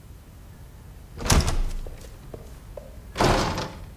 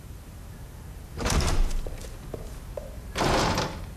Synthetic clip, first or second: second